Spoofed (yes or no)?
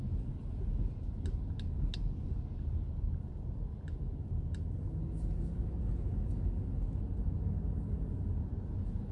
no